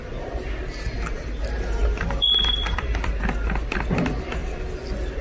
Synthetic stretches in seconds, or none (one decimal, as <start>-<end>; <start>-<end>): 1.8-3.2; 4.4-5.2